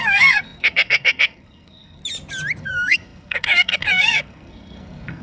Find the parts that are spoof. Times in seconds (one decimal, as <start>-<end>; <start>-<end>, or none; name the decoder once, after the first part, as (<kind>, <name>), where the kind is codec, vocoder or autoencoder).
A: 0.0-2.0 (codec, SNAC); 2.6-5.2